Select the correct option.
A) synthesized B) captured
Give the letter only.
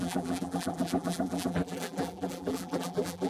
A